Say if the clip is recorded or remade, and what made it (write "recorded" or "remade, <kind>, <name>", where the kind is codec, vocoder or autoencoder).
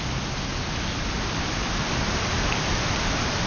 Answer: recorded